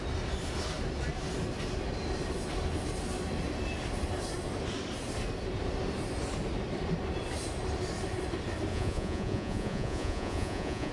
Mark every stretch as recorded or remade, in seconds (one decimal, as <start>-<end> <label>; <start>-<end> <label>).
0.0-8.7 recorded; 8.7-10.9 remade

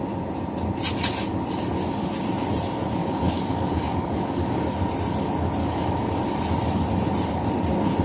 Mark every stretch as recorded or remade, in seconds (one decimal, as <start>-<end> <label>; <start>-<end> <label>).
0.0-3.0 recorded; 3.0-4.7 remade; 4.7-5.6 recorded; 5.6-6.1 remade; 6.1-8.0 recorded

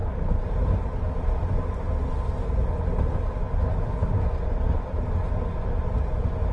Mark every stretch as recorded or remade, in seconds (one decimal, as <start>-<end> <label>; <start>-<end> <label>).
0.0-6.5 recorded

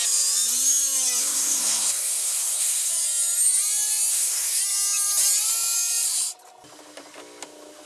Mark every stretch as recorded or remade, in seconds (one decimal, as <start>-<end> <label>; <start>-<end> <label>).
0.0-1.2 recorded; 1.2-2.9 remade; 2.9-4.1 recorded; 4.1-4.6 remade; 4.6-7.9 recorded

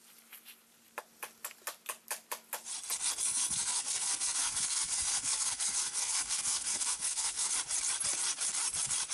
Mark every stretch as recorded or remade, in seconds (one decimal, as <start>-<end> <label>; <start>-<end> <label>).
0.0-3.2 recorded; 3.2-7.5 remade; 7.5-9.1 recorded

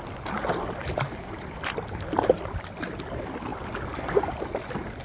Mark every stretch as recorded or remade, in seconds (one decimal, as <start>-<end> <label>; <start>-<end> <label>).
0.0-5.0 recorded

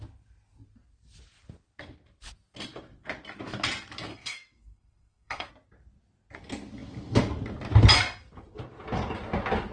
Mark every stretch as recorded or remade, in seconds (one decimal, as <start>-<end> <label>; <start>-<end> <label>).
0.0-4.1 recorded; 4.1-5.5 remade; 5.5-9.7 recorded